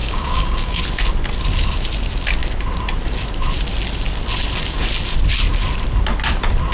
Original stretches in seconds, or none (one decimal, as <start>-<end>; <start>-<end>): 0.8-6.7